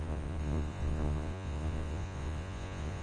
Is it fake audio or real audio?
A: fake